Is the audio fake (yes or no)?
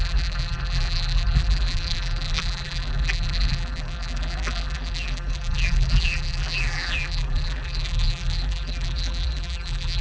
yes